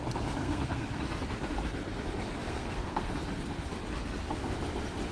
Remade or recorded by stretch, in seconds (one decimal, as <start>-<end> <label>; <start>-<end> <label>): 0.0-0.4 recorded; 0.4-1.0 remade; 1.0-2.4 recorded; 2.4-3.1 remade; 3.1-5.1 recorded